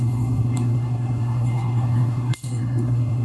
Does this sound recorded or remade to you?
remade